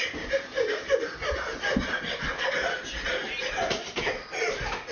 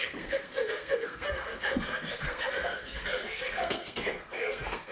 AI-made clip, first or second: second